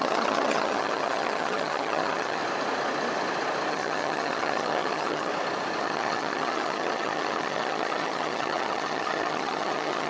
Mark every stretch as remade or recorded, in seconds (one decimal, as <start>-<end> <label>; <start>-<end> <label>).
0.0-2.4 remade; 2.4-3.7 recorded; 3.7-5.3 remade; 5.3-5.8 recorded; 5.8-10.1 remade